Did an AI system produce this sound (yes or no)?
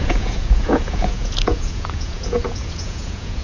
yes